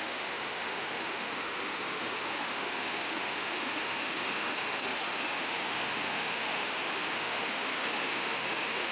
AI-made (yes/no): yes